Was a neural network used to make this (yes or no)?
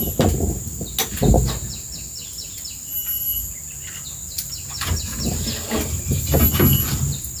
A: no